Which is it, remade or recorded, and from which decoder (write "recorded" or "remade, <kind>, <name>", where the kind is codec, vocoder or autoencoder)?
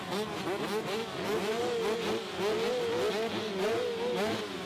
recorded